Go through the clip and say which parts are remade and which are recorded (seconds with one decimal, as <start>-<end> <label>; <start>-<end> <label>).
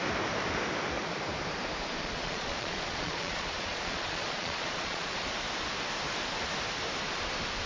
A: 0.0-2.0 recorded; 2.0-5.1 remade; 5.1-7.7 recorded